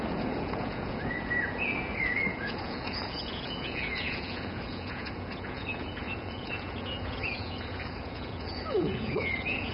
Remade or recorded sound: remade